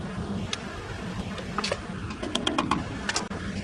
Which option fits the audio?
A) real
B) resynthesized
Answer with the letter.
A